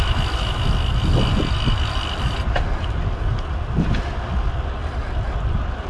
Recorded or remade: recorded